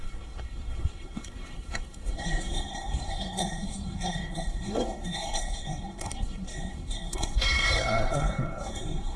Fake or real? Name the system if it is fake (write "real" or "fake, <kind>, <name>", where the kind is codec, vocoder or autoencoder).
fake, codec, SNAC